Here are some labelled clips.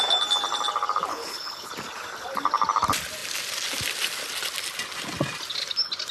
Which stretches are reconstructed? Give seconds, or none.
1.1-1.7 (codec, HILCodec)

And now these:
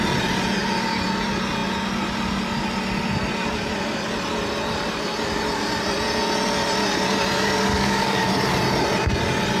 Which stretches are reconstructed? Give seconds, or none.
7.7-8.3 (codec, DAC)

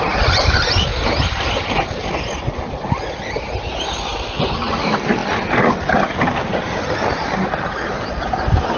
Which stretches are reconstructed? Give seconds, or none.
none

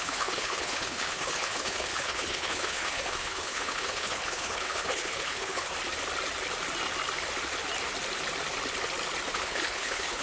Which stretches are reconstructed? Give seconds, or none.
0.0-5.7 (codec, HILCodec); 9.3-10.2

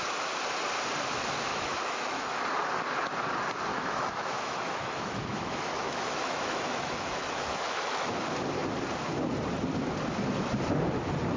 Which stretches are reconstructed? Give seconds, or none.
1.5-2.4 (autoencoder, DAC-VAE); 3.7-8.1

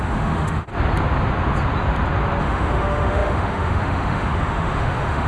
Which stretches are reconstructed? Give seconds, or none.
0.0-0.7 (autoencoder, DAC-VAE); 2.4-5.3

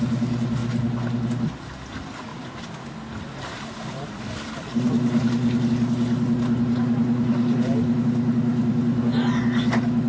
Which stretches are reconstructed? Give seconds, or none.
0.6-1.3 (vocoder, BigVGAN v2); 2.3-5.7

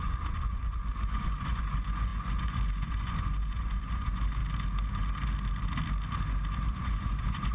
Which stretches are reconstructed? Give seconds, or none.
0.0-4.4 (vocoder, Vocos); 6.7-7.5